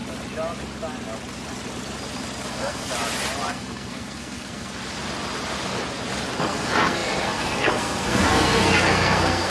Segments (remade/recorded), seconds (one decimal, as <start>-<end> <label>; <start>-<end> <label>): 0.0-2.5 recorded; 2.5-2.9 remade; 2.9-3.5 recorded; 3.5-4.8 remade; 4.8-6.4 recorded; 6.4-9.5 remade